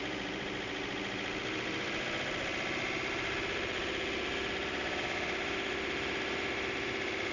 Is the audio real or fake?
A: fake